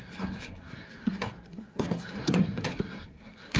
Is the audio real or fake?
fake